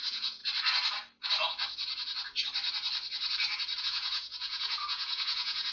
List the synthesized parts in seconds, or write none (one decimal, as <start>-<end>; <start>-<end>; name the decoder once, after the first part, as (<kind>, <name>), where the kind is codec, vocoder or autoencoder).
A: 0.0-0.4 (vocoder, Vocos); 3.8-5.7